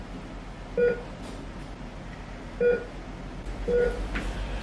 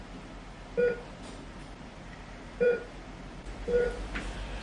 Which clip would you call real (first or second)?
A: first